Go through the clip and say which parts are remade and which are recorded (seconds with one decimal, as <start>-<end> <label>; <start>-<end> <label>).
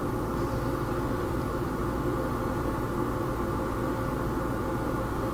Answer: 0.0-1.8 remade; 1.8-5.3 recorded